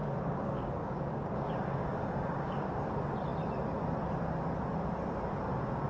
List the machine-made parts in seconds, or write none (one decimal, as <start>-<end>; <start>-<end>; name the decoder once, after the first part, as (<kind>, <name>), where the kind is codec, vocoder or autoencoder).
0.0-2.7 (codec, DAC)